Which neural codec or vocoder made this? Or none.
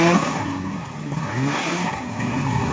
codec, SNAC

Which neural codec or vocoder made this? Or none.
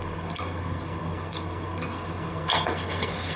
codec, SNAC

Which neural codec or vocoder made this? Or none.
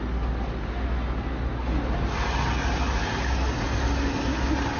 none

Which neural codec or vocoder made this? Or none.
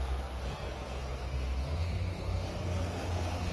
codec, SNAC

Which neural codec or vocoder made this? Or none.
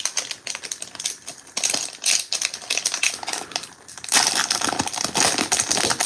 none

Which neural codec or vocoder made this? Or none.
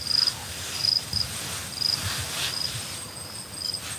none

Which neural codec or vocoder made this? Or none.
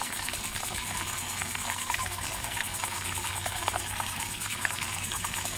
codec, SNAC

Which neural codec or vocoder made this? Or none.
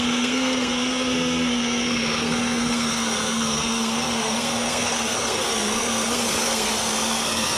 codec, SNAC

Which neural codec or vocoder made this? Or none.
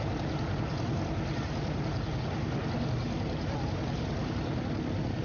none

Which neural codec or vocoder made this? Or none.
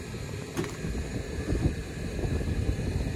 none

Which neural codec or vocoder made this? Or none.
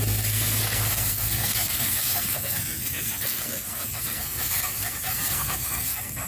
codec, SNAC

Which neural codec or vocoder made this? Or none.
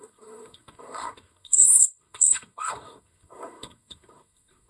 codec, SNAC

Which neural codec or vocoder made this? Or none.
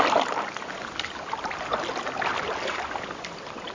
none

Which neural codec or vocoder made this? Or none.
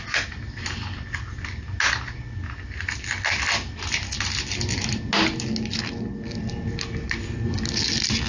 none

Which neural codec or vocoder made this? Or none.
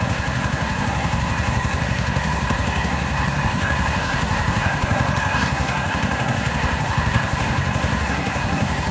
codec, SNAC